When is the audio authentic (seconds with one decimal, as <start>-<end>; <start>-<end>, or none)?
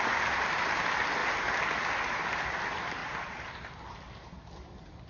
1.2-1.8; 3.0-3.9